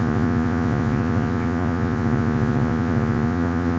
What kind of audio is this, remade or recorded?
remade